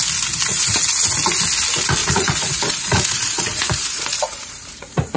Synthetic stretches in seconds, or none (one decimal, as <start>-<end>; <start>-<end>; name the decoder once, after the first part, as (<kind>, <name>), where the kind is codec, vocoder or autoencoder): 0.5-1.1 (vocoder, Vocos); 2.0-5.2